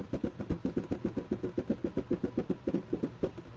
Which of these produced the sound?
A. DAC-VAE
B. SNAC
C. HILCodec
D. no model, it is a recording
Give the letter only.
D